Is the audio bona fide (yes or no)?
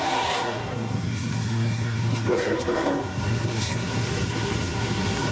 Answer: no